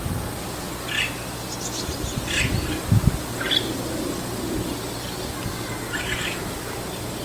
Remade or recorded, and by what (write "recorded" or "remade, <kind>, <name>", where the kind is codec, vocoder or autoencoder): recorded